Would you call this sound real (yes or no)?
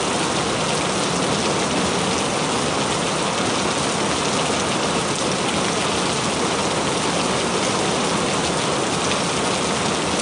yes